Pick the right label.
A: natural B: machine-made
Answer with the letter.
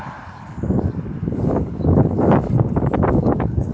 B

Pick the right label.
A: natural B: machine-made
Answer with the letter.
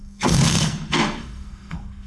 B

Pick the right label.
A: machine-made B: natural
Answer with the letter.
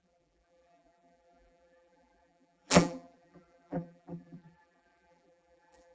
A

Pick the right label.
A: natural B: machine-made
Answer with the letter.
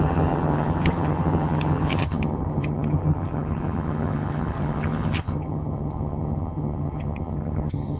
B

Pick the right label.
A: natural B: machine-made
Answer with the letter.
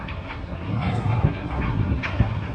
B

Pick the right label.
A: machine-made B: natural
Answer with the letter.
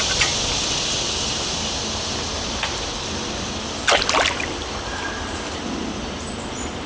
B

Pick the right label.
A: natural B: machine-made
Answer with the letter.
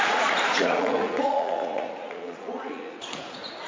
B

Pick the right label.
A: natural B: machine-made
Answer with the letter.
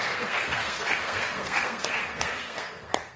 B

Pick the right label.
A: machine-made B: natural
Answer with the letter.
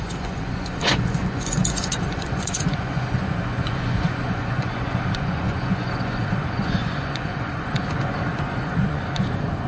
A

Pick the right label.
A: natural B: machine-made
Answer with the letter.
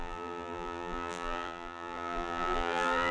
B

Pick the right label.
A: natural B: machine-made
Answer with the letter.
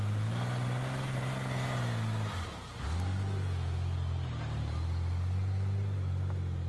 A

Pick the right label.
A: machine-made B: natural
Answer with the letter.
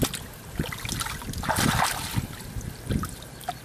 B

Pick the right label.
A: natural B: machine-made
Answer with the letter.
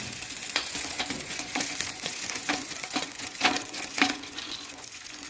B